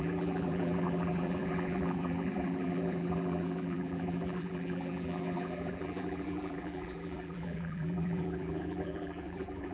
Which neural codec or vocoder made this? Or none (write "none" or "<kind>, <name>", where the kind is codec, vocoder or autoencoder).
vocoder, BigVGAN v2